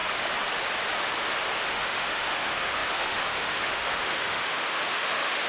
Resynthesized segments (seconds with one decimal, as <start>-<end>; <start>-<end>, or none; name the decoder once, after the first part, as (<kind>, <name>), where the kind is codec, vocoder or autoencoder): 1.7-5.5 (autoencoder, DAC-VAE)